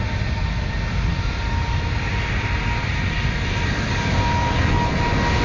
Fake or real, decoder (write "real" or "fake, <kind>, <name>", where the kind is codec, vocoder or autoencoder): real